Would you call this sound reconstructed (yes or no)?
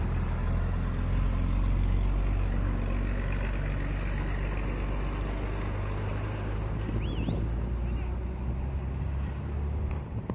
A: no